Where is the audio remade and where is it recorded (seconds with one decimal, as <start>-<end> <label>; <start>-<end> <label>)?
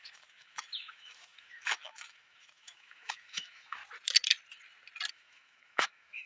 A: 0.0-3.8 remade; 3.8-5.1 recorded; 5.1-6.3 remade